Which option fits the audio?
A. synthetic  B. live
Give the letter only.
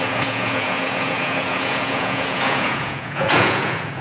A